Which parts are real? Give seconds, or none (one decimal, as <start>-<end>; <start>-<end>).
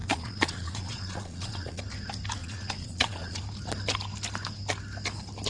1.8-2.4; 3.4-5.5